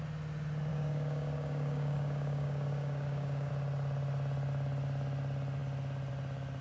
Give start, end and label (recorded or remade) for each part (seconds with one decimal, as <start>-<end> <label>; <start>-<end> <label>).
0.0-0.7 recorded; 0.7-3.5 remade; 3.5-6.6 recorded